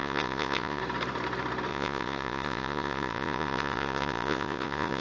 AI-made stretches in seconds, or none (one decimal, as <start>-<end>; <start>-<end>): 0.0-0.8; 1.7-5.0